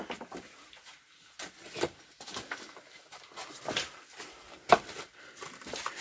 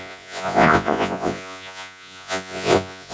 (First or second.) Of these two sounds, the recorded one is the first